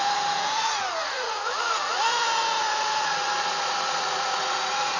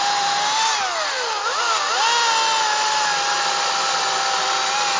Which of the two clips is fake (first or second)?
first